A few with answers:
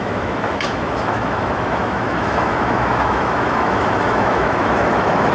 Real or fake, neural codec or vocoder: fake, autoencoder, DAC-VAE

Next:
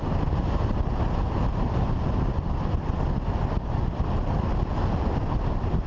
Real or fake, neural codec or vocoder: real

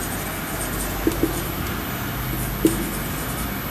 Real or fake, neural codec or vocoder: real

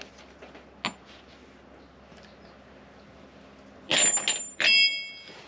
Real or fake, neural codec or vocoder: real